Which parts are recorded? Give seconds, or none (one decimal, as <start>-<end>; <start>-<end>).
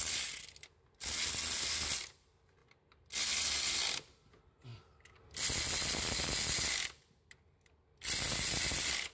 0.0-9.1